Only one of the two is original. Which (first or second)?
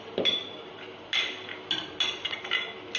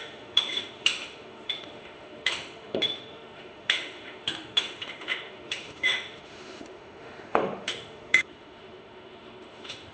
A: first